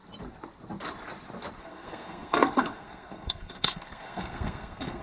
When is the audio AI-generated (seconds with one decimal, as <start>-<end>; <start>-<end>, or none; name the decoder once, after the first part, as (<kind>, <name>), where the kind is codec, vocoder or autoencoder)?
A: 1.6-5.0 (codec, SNAC)